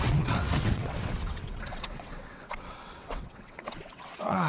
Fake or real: fake